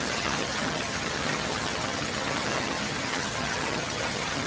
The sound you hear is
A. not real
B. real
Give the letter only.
A